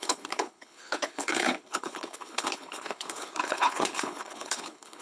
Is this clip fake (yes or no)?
yes